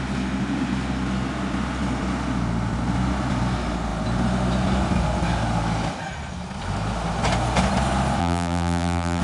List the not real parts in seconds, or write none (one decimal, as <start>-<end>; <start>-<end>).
8.2-9.2